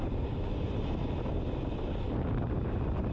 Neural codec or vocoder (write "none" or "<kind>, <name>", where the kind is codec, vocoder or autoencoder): none